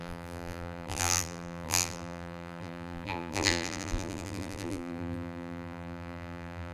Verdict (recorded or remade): remade